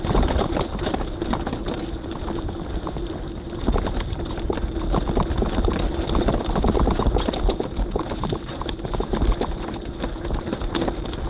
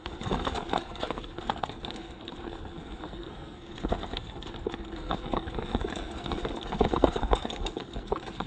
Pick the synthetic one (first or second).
second